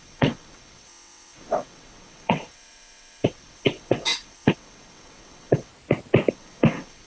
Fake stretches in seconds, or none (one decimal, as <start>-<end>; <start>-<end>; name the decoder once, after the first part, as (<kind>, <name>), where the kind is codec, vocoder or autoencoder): 0.0-5.7 (vocoder, WaveNeXt); 6.3-7.1